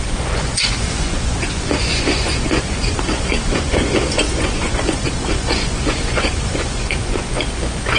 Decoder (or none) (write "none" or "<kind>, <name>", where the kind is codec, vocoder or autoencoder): vocoder, Vocos